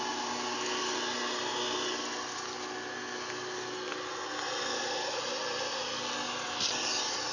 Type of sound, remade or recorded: recorded